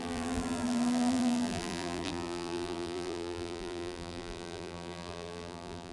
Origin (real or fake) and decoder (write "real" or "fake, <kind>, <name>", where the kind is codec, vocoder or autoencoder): fake, vocoder, BigVGAN v2